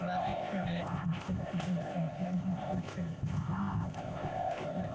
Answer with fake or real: fake